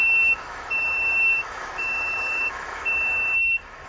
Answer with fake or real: fake